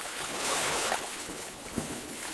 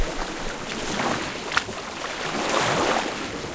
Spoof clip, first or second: first